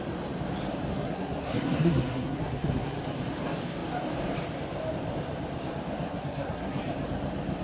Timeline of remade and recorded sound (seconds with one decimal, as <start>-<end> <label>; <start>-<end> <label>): 0.0-0.9 recorded; 0.9-3.0 remade; 3.0-6.1 recorded; 6.1-6.8 remade; 6.8-7.6 recorded